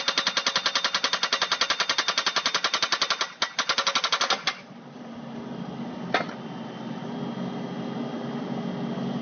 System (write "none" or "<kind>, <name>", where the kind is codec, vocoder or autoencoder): none